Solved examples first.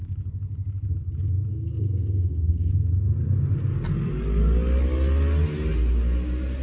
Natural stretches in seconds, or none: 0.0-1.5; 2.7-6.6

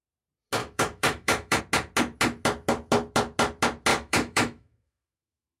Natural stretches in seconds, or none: 0.0-0.6; 1.6-3.9